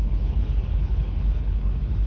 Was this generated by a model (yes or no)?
yes